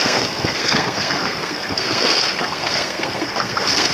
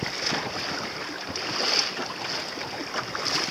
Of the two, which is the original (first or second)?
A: second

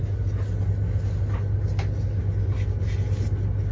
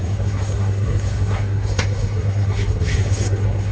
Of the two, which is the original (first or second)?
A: first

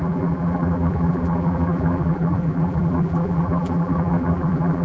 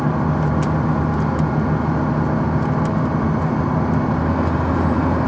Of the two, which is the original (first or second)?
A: second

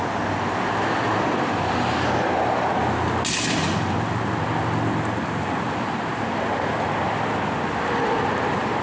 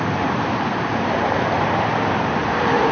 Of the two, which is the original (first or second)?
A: first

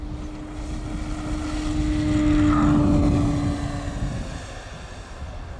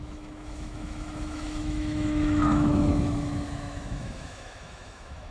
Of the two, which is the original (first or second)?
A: first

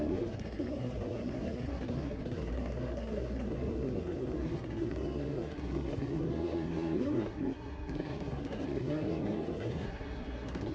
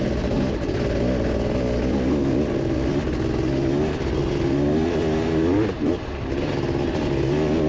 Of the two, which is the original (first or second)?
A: second